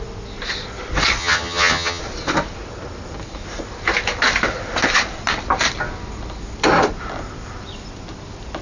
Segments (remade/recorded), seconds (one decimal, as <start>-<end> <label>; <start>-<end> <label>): 0.0-1.2 recorded; 1.2-2.0 remade; 2.0-8.6 recorded